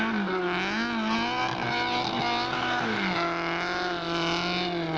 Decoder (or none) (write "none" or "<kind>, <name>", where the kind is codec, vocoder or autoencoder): none